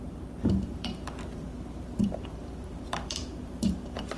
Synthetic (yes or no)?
yes